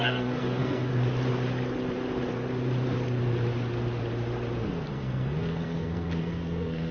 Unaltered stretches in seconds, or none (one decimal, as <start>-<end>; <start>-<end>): 0.9-4.9